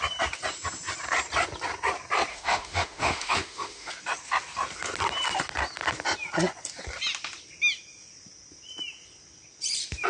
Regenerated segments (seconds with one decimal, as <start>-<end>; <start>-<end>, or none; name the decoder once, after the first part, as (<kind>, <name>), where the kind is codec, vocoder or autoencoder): 2.3-3.9 (autoencoder, DAC-VAE)